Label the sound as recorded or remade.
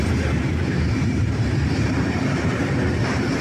remade